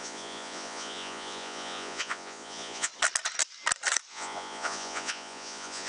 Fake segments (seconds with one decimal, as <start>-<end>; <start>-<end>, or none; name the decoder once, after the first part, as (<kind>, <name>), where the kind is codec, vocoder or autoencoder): 0.0-2.9 (vocoder, Vocos); 4.1-5.9